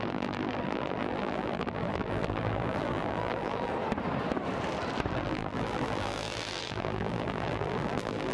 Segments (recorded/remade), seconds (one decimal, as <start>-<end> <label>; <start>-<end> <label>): 0.0-3.7 remade; 3.7-5.1 recorded; 5.1-8.3 remade

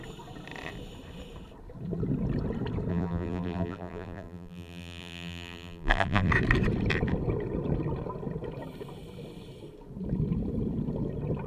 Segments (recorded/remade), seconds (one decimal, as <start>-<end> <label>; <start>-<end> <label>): 0.0-2.9 recorded; 2.9-6.3 remade; 6.3-11.5 recorded